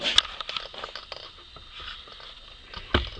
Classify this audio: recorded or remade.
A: recorded